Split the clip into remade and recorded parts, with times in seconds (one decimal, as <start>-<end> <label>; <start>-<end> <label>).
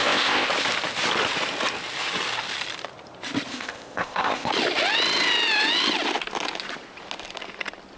0.0-0.5 remade; 0.5-3.5 recorded; 3.5-4.5 remade; 4.5-8.0 recorded